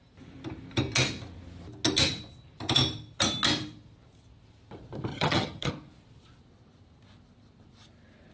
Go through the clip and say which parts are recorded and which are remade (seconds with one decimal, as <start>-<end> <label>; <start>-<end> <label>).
0.0-5.1 recorded; 5.1-5.7 remade; 5.7-8.3 recorded